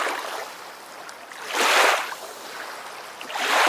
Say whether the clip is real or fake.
real